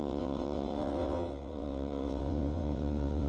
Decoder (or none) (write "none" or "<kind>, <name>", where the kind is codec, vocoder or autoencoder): vocoder, WaveNeXt